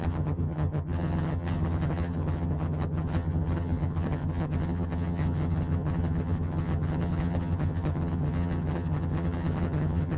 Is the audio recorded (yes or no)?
no